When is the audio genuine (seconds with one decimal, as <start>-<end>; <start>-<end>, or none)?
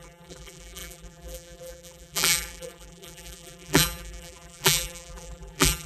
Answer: none